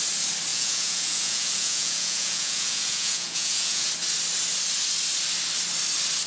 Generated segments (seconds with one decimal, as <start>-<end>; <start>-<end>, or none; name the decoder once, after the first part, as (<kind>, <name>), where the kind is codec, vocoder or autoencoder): 0.5-3.9 (vocoder, Vocos)